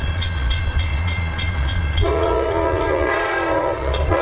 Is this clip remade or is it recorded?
remade